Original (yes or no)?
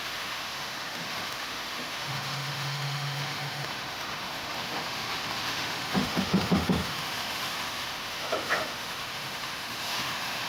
no